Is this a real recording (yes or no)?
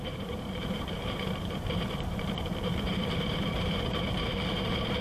no